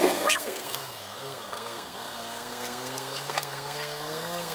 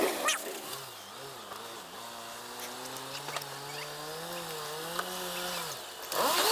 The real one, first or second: second